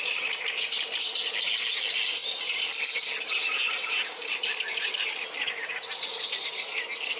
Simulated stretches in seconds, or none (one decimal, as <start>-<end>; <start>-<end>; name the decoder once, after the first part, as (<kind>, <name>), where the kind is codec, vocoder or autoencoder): none